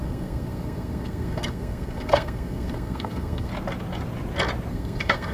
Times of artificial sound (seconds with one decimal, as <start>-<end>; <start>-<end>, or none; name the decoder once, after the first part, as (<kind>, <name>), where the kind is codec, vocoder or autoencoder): 0.0-3.5 (codec, SNAC); 4.7-5.3